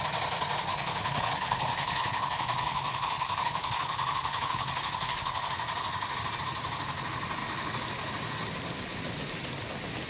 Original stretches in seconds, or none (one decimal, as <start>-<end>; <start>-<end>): 0.0-0.7; 5.5-10.1